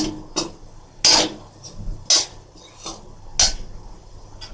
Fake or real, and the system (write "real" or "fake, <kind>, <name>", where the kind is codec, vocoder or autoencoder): real